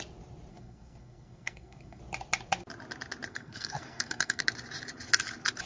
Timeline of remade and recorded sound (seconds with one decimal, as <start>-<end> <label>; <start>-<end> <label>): 0.0-0.5 recorded; 0.5-2.0 remade; 2.0-3.3 recorded; 3.3-4.4 remade; 4.4-5.7 recorded

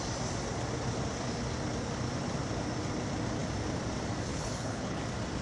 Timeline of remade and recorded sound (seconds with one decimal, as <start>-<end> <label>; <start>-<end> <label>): 0.0-4.3 recorded; 4.3-5.0 remade; 5.0-5.4 recorded

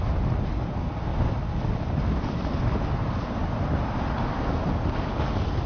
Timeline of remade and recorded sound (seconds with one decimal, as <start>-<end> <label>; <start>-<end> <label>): 0.0-5.7 recorded

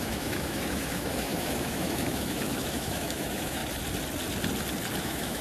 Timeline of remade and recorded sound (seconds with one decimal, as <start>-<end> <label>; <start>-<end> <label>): 0.0-3.6 remade; 3.6-5.0 recorded; 5.0-5.4 remade